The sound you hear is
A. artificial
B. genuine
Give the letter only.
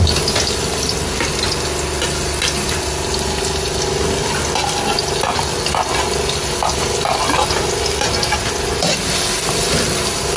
B